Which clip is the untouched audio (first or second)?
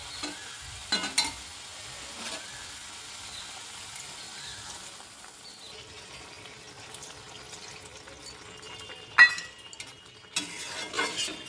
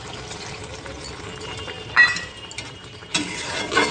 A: first